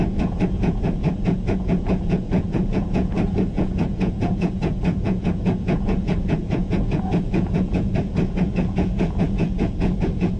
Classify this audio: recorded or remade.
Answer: remade